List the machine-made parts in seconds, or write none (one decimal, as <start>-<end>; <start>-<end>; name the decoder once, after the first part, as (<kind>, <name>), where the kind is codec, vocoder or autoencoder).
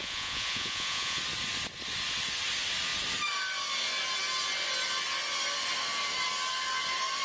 0.0-1.2 (vocoder, Vocos)